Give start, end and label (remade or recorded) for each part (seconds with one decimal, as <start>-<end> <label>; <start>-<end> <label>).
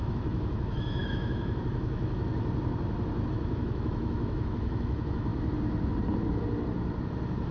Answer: 0.0-2.3 remade; 2.3-3.3 recorded; 3.3-5.3 remade; 5.3-7.5 recorded